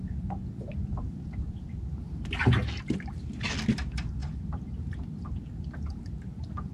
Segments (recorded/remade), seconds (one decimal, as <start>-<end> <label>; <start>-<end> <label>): 0.0-6.7 recorded